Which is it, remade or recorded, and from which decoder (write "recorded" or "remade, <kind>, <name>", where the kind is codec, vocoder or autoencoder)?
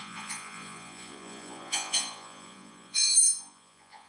remade, vocoder, Vocos